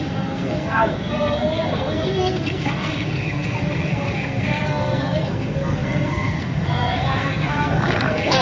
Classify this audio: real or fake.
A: fake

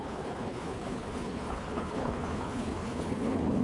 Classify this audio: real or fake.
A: fake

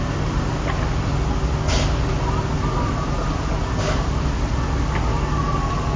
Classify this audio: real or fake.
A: real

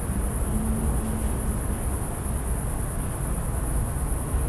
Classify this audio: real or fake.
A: real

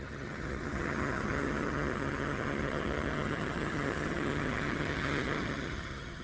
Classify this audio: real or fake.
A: fake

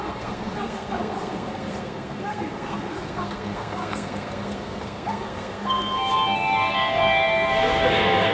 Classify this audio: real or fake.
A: fake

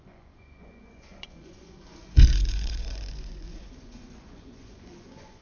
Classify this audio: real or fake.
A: fake